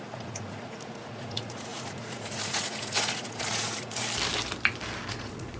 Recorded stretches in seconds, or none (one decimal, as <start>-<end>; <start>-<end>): 4.0-5.1